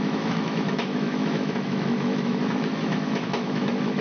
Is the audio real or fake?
fake